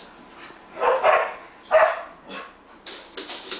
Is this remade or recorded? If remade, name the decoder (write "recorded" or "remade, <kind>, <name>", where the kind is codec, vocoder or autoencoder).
recorded